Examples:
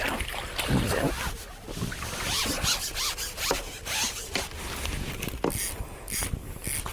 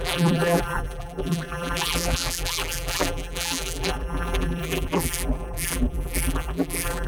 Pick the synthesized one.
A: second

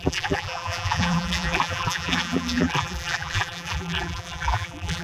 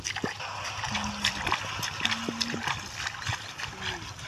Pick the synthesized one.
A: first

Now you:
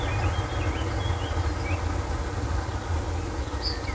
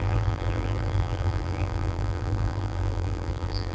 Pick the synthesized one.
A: second